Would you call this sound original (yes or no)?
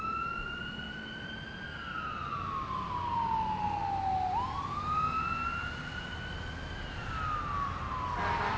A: yes